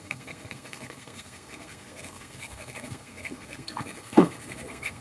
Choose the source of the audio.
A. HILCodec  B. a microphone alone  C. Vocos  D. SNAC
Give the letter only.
D